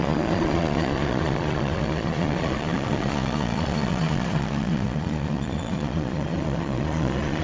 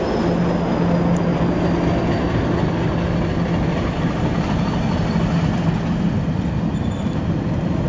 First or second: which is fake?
first